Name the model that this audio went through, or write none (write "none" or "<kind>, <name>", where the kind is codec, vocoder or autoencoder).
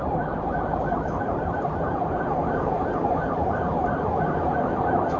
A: vocoder, BigVGAN v2